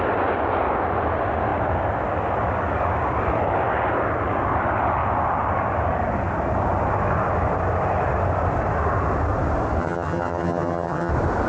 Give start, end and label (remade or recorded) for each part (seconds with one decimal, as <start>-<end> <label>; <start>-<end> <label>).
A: 0.0-9.8 recorded; 9.8-11.1 remade; 11.1-11.5 recorded